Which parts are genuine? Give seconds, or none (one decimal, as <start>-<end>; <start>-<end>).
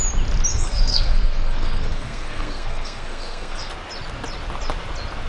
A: 0.0-0.5; 3.7-5.3